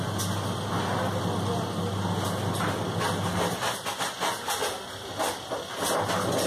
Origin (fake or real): real